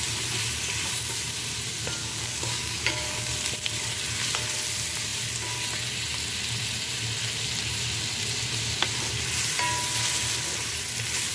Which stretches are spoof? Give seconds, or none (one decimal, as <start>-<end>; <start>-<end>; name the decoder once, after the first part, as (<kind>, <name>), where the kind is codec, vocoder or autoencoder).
2.0-3.3 (codec, DAC)